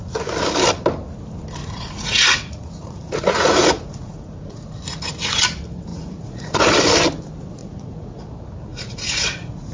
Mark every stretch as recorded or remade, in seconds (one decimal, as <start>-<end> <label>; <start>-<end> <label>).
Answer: 0.0-1.6 recorded; 1.6-5.4 remade; 5.4-5.9 recorded; 5.9-6.7 remade; 6.7-7.6 recorded; 7.6-8.2 remade; 8.2-8.7 recorded; 8.7-9.7 remade